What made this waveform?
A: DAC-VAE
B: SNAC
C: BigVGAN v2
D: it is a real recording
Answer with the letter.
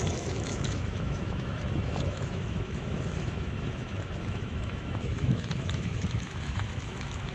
A